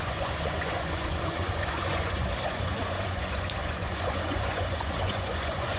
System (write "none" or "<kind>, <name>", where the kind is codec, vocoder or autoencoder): vocoder, Vocos